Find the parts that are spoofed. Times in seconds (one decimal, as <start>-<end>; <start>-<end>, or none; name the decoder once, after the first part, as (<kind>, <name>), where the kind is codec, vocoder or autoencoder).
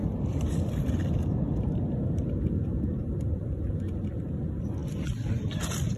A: 0.0-3.6 (vocoder, BigVGAN v2); 4.8-6.0